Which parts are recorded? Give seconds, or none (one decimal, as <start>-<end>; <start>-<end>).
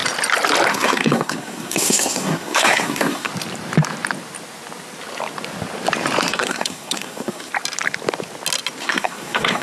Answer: 0.0-0.7; 3.3-6.3; 7.5-8.8